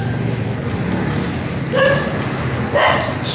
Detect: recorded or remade recorded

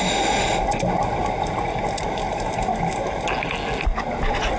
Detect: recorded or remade recorded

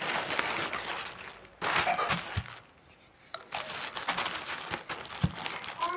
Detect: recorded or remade recorded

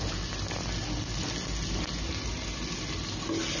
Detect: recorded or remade recorded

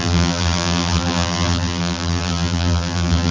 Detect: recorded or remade remade